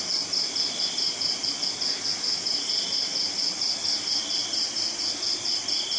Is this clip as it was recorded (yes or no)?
yes